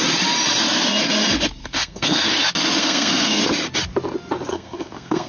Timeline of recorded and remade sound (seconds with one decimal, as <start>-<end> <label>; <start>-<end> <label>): 0.0-1.6 recorded; 1.6-2.3 remade; 2.3-2.8 recorded; 2.8-3.4 remade; 3.4-4.5 recorded; 4.5-5.3 remade